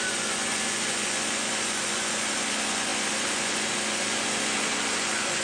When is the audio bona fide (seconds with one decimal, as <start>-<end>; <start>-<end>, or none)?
none